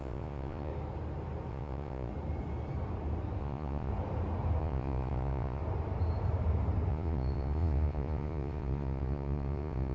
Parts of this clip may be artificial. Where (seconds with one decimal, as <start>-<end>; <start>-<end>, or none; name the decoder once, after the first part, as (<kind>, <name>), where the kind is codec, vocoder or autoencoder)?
0.0-0.7 (vocoder, Vocos); 1.5-2.1; 3.4-3.9; 4.6-5.6; 6.9-9.9